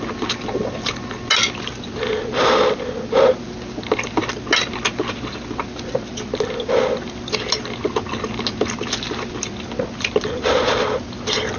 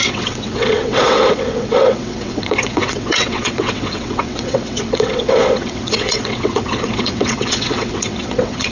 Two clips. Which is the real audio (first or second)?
first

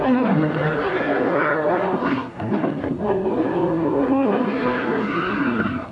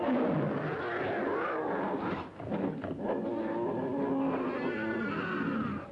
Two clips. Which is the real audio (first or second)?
second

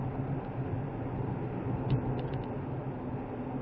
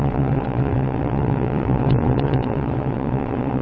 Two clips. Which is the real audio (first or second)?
first